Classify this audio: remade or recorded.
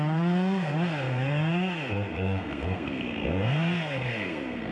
remade